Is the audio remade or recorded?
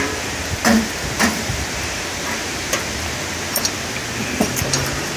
remade